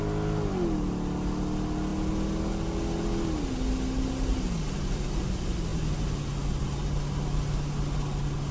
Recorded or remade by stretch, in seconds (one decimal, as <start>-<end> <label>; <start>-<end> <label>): 0.0-8.5 recorded